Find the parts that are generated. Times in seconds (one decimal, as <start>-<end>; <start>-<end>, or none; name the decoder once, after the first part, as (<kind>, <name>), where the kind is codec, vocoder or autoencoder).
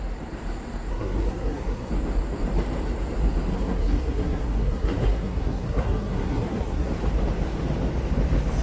0.9-1.9 (codec, SNAC); 3.5-6.9